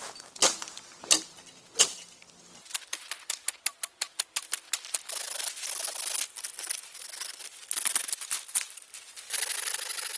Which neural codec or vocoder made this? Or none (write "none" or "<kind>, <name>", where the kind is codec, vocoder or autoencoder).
none